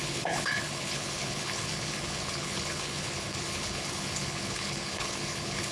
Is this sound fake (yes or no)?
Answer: yes